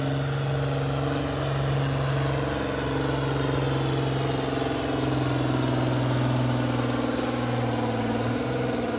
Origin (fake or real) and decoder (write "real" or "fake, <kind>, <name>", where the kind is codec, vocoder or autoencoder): real